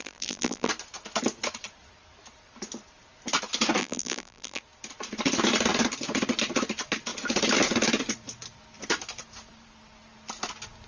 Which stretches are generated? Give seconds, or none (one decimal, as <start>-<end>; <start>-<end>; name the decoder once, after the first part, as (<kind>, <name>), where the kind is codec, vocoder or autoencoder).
0.0-0.7 (vocoder, BigVGAN v2); 3.8-4.6